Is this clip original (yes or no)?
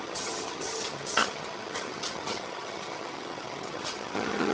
no